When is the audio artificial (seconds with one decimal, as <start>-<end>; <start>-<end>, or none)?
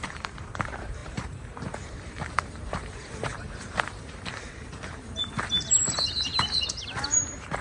0.0-7.6